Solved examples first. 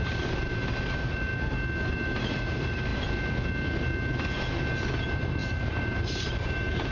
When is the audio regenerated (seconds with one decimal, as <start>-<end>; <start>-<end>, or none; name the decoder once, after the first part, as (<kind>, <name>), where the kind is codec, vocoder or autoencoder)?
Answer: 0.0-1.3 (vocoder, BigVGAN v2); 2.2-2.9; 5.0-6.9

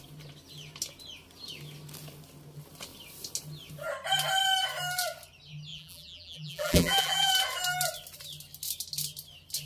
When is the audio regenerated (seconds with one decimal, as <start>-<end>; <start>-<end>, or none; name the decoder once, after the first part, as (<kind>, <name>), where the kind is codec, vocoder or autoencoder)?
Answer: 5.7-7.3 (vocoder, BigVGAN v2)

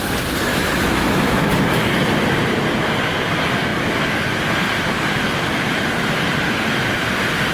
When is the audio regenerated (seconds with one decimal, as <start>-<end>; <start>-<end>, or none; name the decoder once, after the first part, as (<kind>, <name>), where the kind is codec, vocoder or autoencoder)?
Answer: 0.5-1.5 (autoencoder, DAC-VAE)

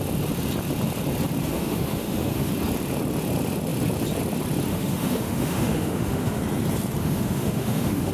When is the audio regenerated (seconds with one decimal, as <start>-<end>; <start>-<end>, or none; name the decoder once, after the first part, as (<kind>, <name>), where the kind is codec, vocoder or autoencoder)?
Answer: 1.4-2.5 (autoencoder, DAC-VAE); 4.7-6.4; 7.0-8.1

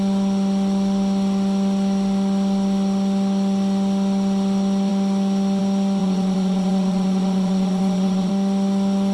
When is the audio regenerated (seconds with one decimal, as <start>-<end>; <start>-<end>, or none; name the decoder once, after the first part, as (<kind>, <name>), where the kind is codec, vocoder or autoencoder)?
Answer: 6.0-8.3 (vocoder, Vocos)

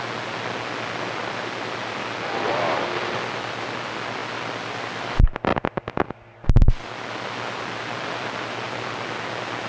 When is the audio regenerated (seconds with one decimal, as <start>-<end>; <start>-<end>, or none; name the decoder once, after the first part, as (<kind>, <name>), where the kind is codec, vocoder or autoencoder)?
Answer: none

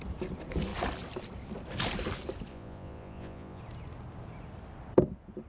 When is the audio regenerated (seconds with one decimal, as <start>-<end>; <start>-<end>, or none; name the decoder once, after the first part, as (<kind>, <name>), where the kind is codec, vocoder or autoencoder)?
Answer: 2.5-3.6 (vocoder, Vocos)